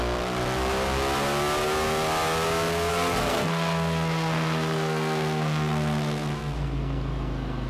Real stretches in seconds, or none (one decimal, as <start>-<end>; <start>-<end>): 0.0-2.9